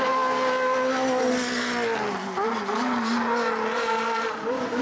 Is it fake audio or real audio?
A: real